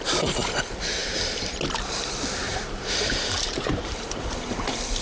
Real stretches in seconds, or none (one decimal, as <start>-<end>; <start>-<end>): 0.0-1.0; 1.5-2.5; 4.2-5.0